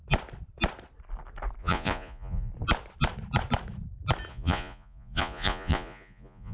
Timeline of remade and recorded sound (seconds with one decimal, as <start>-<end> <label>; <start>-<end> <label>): 0.0-1.6 recorded; 1.6-2.5 remade; 2.5-4.3 recorded; 4.3-6.5 remade